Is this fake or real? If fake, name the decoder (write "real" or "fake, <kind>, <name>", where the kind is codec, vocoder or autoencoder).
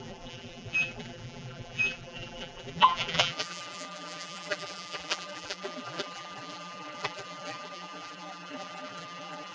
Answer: fake, vocoder, BigVGAN v2